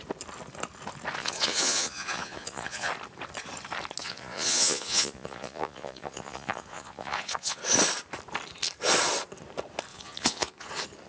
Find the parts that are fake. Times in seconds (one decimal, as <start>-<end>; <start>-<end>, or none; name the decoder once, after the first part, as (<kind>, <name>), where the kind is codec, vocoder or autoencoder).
1.2-2.9 (vocoder, Vocos); 4.0-7.6; 9.9-10.7